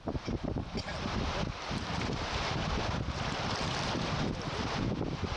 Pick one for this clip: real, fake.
fake